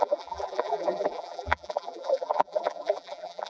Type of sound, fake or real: fake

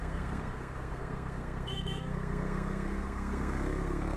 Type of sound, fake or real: fake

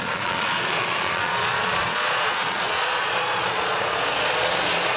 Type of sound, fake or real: fake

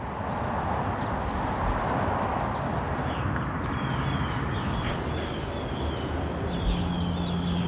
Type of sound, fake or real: real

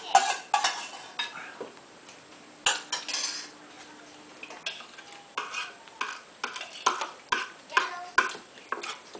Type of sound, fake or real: real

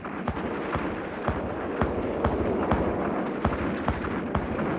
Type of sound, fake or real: real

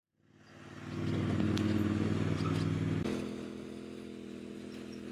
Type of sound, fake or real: real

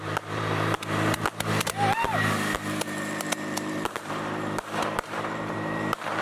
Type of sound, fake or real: fake